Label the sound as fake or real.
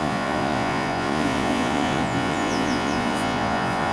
fake